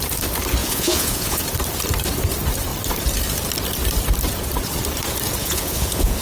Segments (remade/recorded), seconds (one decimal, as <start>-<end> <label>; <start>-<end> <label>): 0.0-0.6 recorded; 0.6-1.4 remade; 1.4-5.4 recorded; 5.4-6.2 remade